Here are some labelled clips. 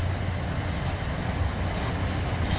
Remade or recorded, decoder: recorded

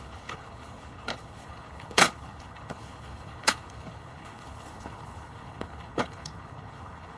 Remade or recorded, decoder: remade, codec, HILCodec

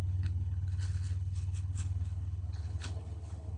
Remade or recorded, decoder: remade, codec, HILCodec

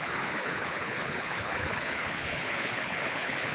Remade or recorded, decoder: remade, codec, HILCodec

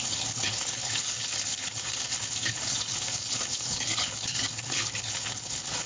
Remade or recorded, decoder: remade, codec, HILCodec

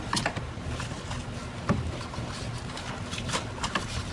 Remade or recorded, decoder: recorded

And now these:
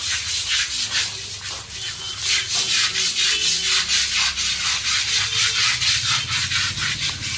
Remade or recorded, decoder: recorded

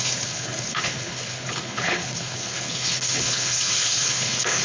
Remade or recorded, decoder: remade, codec, HILCodec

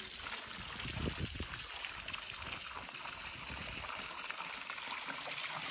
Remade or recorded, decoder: recorded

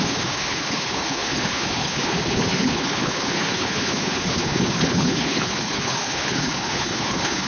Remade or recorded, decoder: remade, codec, HILCodec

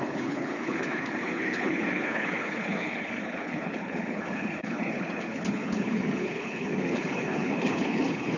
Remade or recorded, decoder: remade, codec, HILCodec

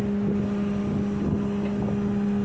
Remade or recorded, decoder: recorded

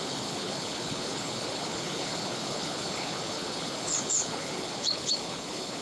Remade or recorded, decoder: remade, codec, HILCodec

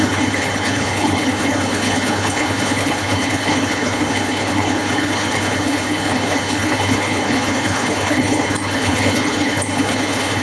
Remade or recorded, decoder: remade, codec, HILCodec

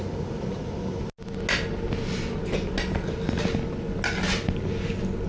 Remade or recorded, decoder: recorded